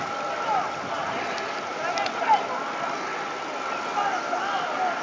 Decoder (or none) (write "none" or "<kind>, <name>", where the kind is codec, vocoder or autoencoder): none